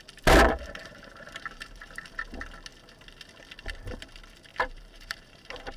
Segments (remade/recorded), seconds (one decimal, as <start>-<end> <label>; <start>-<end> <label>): 0.0-0.8 recorded; 0.8-2.2 remade; 2.2-4.5 recorded; 4.5-5.8 remade